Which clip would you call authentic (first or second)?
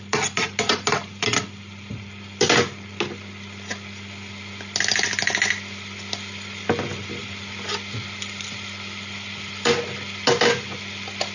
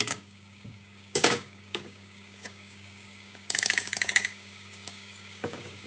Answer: first